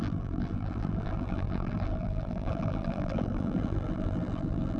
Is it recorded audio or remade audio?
remade